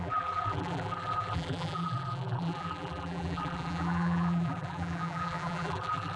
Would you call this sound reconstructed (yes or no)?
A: yes